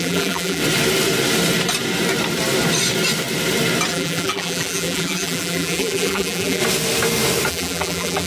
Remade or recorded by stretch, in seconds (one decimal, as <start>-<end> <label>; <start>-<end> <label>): 0.0-0.6 remade; 0.6-3.9 recorded; 3.9-6.6 remade; 6.6-7.5 recorded; 7.5-8.3 remade